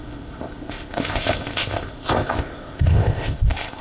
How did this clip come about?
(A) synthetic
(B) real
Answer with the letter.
A